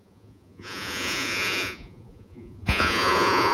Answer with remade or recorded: remade